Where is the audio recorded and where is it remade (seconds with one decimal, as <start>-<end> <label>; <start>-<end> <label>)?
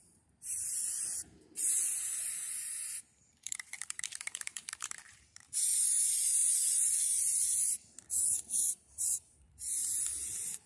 0.0-6.4 remade; 6.4-8.7 recorded; 8.7-9.8 remade; 9.8-10.7 recorded